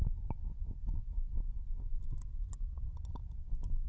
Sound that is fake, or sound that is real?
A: real